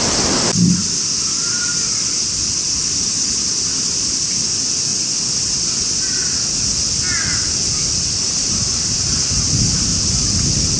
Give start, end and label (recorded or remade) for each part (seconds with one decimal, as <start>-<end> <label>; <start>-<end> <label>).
0.0-10.8 recorded